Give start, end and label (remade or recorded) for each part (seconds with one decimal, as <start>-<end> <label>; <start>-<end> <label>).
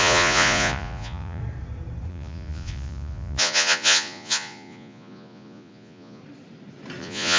0.0-1.4 remade; 1.4-2.1 recorded; 2.1-6.2 remade; 6.2-7.0 recorded; 7.0-7.4 remade